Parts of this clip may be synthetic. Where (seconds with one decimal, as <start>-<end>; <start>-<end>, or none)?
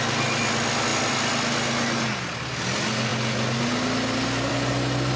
none